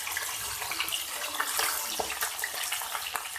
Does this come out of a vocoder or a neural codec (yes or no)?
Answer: yes